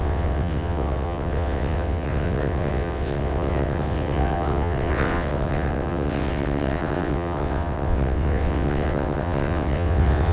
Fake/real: fake